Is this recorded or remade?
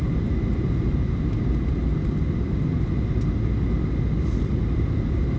recorded